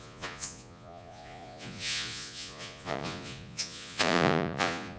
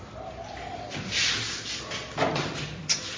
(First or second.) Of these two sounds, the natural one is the second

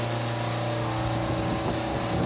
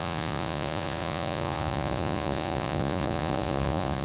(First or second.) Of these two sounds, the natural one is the first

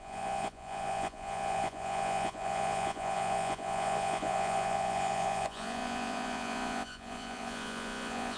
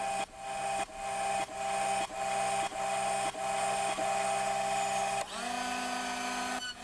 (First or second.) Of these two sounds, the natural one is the second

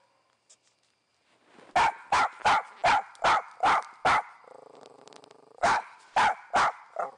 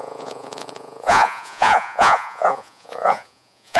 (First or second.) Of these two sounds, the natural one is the first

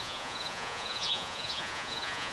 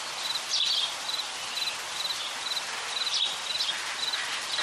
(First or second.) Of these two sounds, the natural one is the second